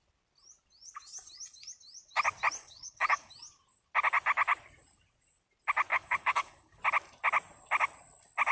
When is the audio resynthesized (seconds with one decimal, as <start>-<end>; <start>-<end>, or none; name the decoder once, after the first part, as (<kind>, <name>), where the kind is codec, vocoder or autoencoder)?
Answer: 2.6-3.3 (codec, HILCodec); 5.9-6.8

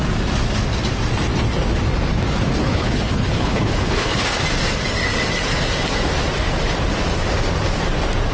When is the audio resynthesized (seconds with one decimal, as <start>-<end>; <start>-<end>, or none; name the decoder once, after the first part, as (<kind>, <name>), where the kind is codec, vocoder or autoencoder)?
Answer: 2.6-4.4 (codec, HILCodec)

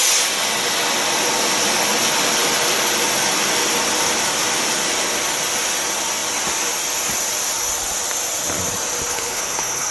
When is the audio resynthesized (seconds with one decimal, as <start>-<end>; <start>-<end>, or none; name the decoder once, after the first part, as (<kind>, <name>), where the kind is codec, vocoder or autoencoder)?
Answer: 9.1-9.9 (codec, HILCodec)